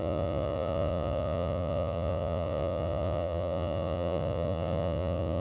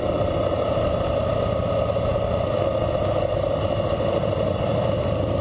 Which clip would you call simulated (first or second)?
first